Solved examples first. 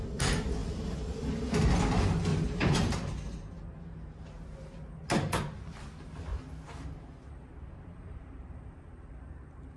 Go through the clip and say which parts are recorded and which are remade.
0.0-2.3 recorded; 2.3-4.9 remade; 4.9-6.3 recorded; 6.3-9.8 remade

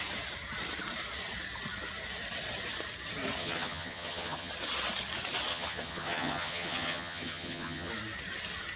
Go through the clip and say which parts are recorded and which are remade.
0.0-3.4 recorded; 3.4-4.5 remade; 4.5-5.5 recorded; 5.5-7.9 remade; 7.9-8.8 recorded